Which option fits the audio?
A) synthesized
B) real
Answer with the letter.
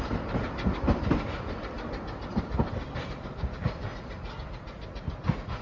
B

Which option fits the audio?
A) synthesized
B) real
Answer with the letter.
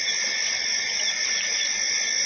B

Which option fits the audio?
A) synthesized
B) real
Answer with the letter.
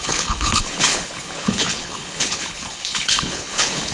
A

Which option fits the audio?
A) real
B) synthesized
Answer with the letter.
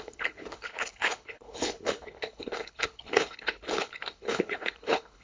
B